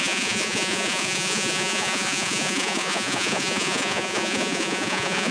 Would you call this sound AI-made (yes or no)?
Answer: yes